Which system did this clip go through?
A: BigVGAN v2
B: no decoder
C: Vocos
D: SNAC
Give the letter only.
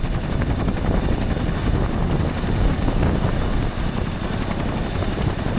B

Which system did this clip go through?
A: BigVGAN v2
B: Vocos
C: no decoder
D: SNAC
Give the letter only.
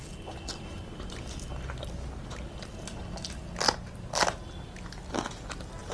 C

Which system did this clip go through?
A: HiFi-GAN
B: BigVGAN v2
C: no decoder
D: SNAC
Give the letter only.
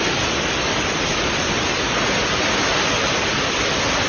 C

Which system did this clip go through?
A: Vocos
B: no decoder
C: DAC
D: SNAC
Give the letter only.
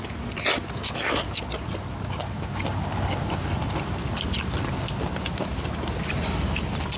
B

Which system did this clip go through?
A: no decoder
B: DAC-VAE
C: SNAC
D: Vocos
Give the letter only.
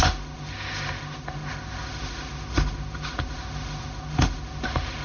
B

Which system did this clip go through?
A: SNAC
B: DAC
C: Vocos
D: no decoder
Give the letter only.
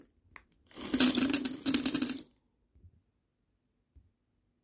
D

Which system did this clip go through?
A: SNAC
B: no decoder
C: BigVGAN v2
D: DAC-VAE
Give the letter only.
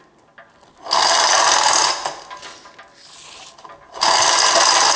B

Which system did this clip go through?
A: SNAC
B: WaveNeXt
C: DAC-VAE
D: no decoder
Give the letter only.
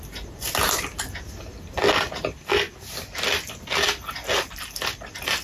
D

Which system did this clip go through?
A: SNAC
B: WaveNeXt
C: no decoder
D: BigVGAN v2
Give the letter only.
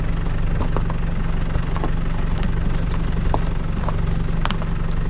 C